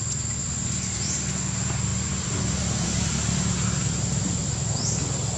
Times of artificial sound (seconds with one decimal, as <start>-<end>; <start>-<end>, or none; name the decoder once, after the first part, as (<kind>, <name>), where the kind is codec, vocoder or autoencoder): 0.4-1.3 (vocoder, BigVGAN v2); 1.9-4.4